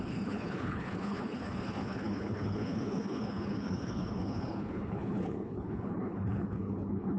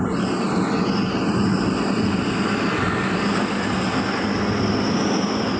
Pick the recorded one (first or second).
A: second